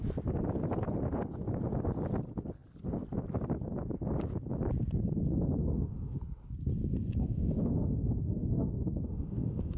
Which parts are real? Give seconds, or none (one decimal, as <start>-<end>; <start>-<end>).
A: 0.0-5.6; 6.2-7.2